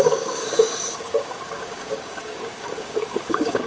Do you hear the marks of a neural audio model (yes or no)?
yes